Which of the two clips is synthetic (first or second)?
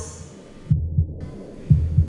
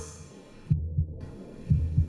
second